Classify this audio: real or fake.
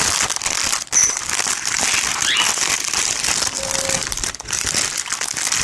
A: real